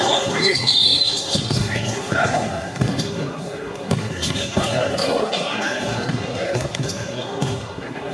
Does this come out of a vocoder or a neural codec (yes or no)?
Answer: yes